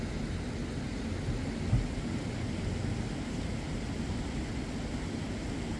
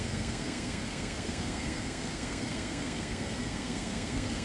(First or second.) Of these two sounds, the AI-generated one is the second